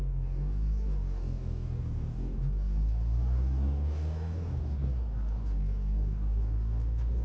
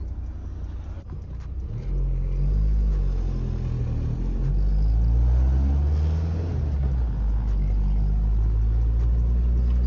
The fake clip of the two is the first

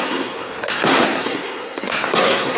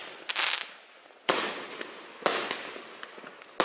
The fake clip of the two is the first